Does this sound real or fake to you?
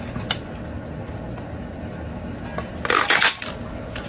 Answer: real